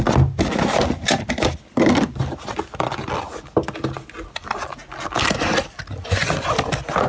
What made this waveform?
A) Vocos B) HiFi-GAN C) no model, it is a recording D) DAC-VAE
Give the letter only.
C